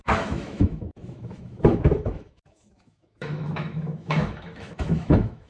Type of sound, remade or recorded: remade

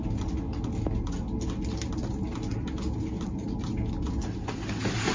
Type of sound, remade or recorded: recorded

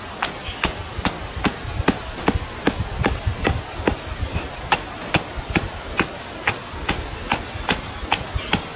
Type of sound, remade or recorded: recorded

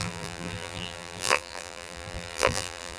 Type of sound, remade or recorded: remade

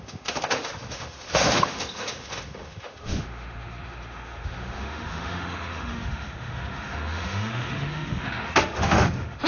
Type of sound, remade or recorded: remade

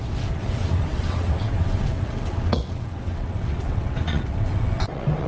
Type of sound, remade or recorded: remade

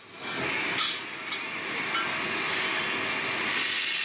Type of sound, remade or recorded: recorded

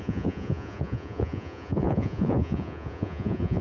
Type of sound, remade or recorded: remade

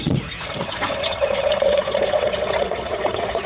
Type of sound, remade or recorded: remade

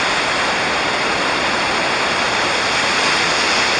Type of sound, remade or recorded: recorded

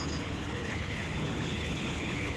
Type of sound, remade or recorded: remade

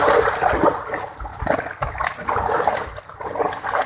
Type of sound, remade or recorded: recorded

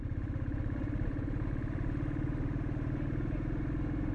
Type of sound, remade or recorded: remade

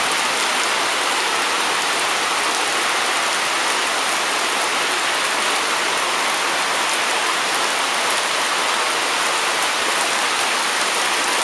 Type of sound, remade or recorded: recorded